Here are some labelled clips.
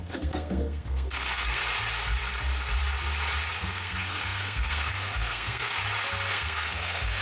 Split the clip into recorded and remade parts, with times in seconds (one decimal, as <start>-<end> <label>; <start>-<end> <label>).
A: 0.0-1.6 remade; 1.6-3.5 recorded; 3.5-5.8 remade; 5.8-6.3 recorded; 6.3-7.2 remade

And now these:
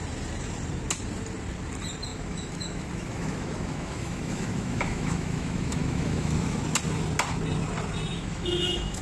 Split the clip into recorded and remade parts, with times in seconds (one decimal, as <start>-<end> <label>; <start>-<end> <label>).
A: 0.0-2.1 recorded; 2.1-6.6 remade; 6.6-8.1 recorded; 8.1-9.0 remade

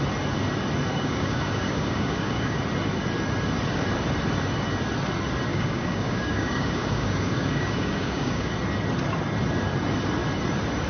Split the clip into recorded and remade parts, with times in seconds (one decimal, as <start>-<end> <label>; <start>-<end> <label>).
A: 0.0-0.9 recorded; 0.9-2.6 remade; 2.6-5.5 recorded; 5.5-8.5 remade; 8.5-10.9 recorded

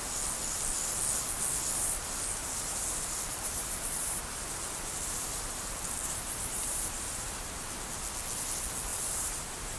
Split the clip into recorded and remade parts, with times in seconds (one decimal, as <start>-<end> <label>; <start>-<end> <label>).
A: 0.0-2.4 recorded; 2.4-7.7 remade; 7.7-8.9 recorded; 8.9-9.8 remade

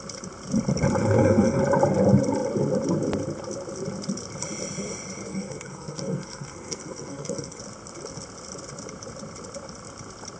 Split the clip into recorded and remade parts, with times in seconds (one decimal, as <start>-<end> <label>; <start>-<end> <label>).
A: 0.0-1.0 recorded; 1.0-1.6 remade; 1.6-5.3 recorded; 5.3-7.6 remade; 7.6-10.4 recorded

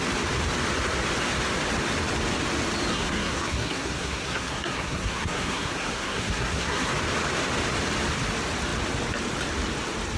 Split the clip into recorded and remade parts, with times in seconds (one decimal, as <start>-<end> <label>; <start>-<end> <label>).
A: 0.0-2.9 recorded; 2.9-6.9 remade; 6.9-10.2 recorded